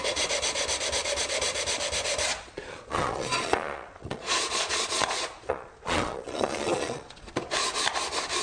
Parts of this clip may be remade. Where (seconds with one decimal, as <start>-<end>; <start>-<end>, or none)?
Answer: 2.3-7.3